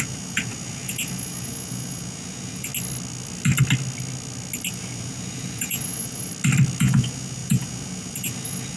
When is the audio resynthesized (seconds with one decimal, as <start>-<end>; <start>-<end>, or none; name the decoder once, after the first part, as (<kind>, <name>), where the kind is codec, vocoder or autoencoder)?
0.0-2.7 (vocoder, Vocos); 4.7-6.3; 6.8-8.8